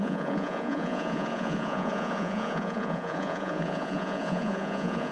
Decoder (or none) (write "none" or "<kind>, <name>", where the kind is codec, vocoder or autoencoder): vocoder, Vocos